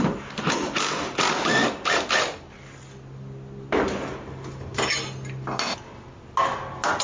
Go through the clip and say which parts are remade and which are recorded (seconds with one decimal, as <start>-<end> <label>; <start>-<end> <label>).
0.0-7.0 recorded